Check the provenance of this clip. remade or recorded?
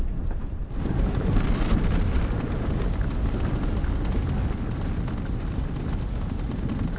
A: recorded